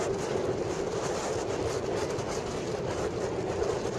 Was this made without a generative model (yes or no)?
yes